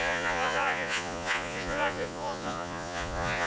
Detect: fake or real fake